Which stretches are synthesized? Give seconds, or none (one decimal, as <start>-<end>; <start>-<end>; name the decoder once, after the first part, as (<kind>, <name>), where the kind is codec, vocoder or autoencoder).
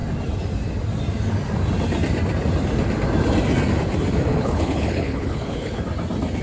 4.3-5.8 (codec, HILCodec)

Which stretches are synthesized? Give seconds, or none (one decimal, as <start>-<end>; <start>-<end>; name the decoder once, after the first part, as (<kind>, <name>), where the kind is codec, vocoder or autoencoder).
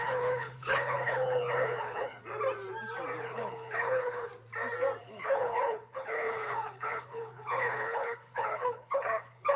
0.0-2.2 (codec, HILCodec); 3.2-4.3; 5.0-9.6